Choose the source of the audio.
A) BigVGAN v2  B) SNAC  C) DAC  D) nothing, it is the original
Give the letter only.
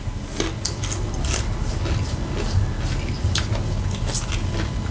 D